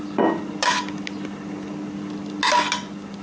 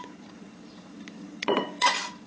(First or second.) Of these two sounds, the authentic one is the first